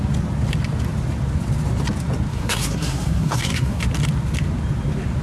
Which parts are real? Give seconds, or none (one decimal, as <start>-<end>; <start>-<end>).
0.0-2.3; 3.8-5.2

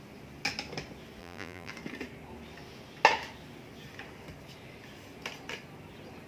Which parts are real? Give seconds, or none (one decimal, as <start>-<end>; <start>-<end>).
0.0-1.2; 1.7-6.3

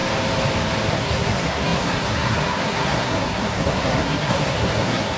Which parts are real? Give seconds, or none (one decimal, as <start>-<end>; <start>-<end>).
0.0-0.9

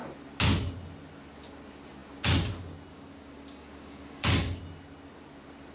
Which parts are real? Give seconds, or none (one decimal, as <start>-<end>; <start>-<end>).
0.0-2.9; 4.6-5.7

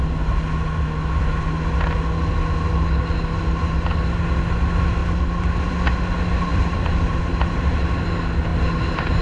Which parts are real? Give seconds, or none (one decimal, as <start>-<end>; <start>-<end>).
0.0-6.5; 7.2-8.5

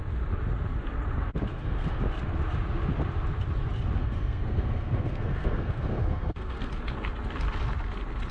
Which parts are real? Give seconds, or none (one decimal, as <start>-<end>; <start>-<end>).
0.0-1.5; 2.0-4.0; 6.7-8.3

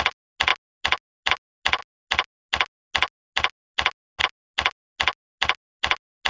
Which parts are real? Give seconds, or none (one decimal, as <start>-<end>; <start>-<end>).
0.0-6.3

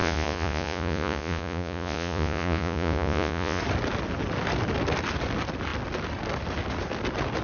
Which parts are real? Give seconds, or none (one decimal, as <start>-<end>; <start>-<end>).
3.6-7.4